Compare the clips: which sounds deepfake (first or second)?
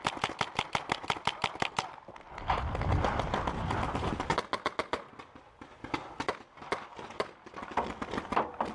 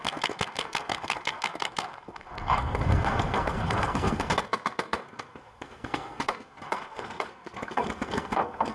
second